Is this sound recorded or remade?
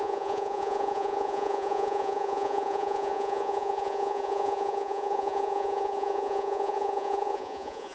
remade